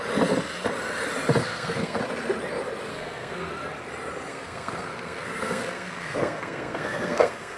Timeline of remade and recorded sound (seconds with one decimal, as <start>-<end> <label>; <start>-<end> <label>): 0.0-1.4 recorded; 1.4-2.0 remade; 2.0-2.9 recorded; 2.9-3.5 remade; 3.5-4.3 recorded; 4.3-7.6 remade